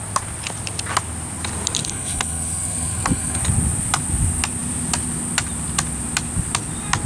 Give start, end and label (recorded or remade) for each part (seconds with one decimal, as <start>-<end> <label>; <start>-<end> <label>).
0.0-1.8 recorded; 1.8-3.4 remade; 3.4-7.1 recorded